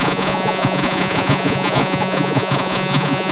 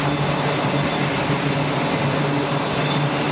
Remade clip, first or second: first